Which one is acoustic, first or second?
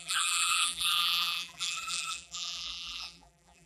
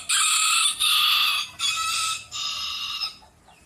second